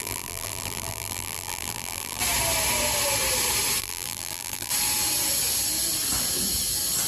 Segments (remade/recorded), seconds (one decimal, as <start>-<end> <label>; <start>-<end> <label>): 0.0-2.2 remade; 2.2-3.8 recorded; 3.8-4.7 remade; 4.7-7.1 recorded